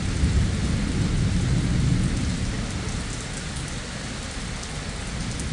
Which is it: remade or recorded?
recorded